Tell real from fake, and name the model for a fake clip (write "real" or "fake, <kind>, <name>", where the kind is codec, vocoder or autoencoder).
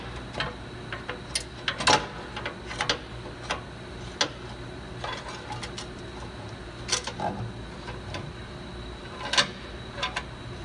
real